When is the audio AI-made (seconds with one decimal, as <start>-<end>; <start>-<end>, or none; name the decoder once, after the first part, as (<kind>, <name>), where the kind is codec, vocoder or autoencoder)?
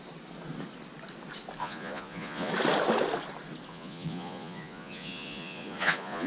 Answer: 1.6-2.5 (vocoder, Vocos); 3.7-6.3